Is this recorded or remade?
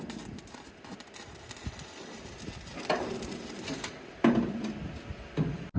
recorded